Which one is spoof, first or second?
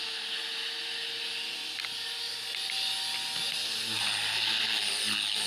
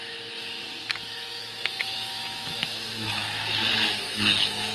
second